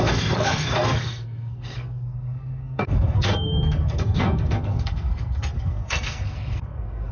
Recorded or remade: remade